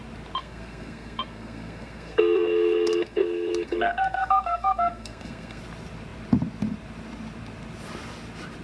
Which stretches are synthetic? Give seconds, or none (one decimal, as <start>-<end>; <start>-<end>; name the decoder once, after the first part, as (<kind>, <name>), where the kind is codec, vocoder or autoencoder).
0.4-5.6 (codec, SNAC)